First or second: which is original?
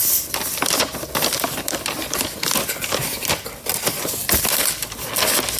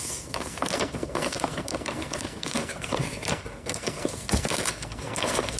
first